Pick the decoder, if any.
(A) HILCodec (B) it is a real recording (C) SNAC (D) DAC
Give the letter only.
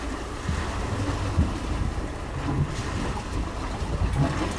B